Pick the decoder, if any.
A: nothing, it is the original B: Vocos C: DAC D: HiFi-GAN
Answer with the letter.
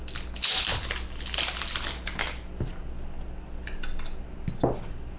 A